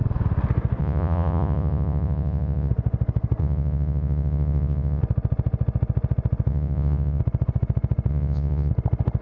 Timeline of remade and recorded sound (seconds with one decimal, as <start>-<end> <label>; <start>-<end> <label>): 0.0-0.8 recorded; 0.8-2.7 remade; 2.7-3.4 recorded; 3.4-5.0 remade; 5.0-6.5 recorded; 6.5-7.2 remade; 7.2-8.1 recorded; 8.1-8.7 remade; 8.7-9.2 recorded